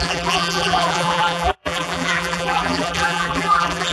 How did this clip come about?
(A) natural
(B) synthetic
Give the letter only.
B